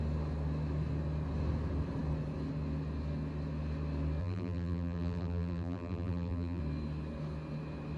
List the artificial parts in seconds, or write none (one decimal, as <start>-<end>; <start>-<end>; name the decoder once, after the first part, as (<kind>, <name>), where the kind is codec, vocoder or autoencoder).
4.2-6.6 (vocoder, BigVGAN v2)